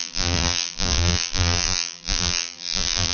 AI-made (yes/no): yes